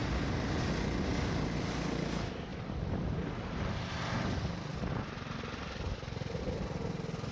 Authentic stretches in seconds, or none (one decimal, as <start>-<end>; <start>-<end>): 0.0-7.3